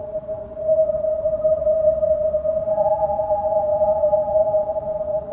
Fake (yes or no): yes